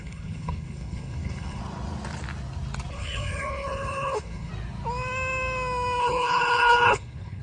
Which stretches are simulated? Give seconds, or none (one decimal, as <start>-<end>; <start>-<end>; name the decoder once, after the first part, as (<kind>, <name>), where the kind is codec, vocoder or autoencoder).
0.0-1.6 (codec, HILCodec); 2.9-4.5; 6.0-7.4